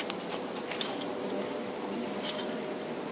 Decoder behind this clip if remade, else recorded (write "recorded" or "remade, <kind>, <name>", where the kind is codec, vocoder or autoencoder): recorded